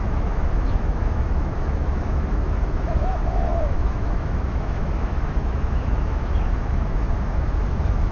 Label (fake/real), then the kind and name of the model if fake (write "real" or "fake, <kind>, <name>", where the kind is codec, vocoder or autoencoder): fake, autoencoder, DAC-VAE